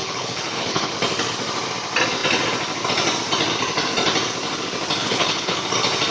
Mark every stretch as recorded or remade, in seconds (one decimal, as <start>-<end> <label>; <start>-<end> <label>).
0.0-0.9 remade; 0.9-5.0 recorded; 5.0-5.6 remade; 5.6-6.1 recorded